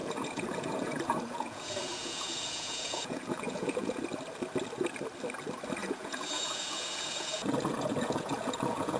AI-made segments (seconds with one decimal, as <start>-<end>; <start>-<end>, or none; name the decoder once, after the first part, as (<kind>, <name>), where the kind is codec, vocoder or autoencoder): 0.0-4.0 (vocoder, Vocos); 5.8-9.0